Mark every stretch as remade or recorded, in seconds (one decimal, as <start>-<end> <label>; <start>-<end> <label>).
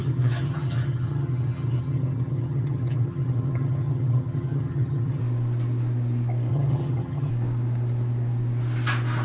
0.0-5.2 remade; 5.2-6.5 recorded; 6.5-7.3 remade; 7.3-9.2 recorded